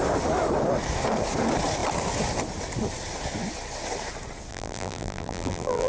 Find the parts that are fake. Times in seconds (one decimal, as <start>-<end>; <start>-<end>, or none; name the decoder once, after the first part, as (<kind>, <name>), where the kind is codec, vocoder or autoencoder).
4.5-5.9 (vocoder, BigVGAN v2)